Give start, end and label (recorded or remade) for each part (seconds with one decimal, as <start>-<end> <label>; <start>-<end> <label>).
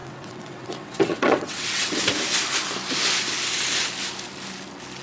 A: 0.0-2.0 remade; 2.0-5.0 recorded